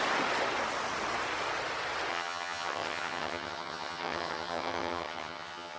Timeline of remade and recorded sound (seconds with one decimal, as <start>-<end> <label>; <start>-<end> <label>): 0.0-2.1 recorded; 2.1-5.8 remade